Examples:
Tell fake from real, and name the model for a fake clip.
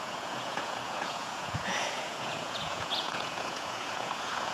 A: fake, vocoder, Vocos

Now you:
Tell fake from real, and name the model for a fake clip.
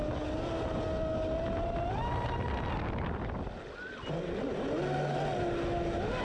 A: real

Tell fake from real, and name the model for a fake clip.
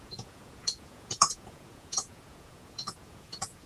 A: fake, vocoder, Vocos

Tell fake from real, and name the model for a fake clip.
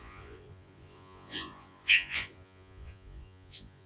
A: fake, vocoder, Vocos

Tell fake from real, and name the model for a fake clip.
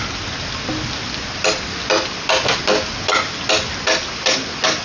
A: real